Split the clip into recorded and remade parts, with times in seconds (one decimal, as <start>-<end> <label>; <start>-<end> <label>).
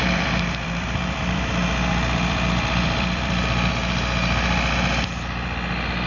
0.0-3.7 remade; 3.7-6.1 recorded